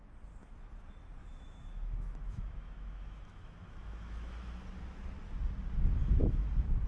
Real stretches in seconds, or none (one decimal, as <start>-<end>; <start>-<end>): 0.0-1.2; 4.6-6.0; 6.5-6.9